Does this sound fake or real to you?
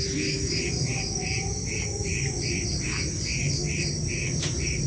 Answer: real